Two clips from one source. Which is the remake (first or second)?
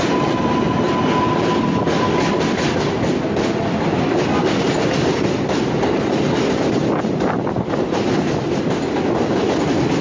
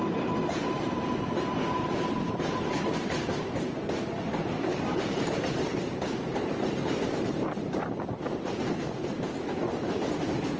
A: second